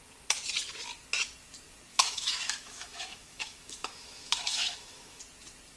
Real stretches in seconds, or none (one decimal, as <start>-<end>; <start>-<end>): 0.0-1.9; 5.2-5.8